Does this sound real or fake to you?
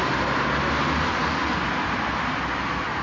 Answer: real